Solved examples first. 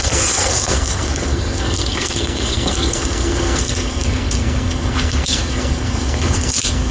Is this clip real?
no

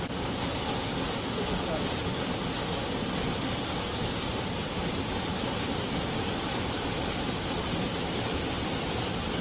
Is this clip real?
yes